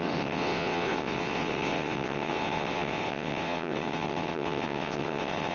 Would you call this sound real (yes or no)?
no